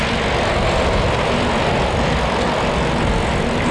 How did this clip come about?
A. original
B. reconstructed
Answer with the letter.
A